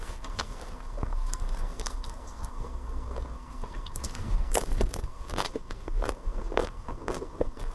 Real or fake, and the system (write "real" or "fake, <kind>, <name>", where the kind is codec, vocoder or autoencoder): fake, codec, SNAC